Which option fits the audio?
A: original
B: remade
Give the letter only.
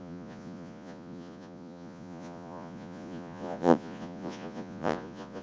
B